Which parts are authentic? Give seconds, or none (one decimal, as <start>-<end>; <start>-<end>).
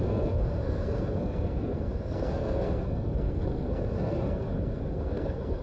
none